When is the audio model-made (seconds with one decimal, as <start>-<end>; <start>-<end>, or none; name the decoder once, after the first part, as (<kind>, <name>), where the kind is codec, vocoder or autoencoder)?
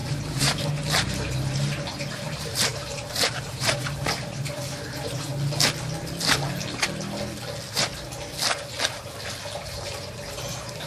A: 0.0-5.3 (vocoder, BigVGAN v2); 9.6-10.9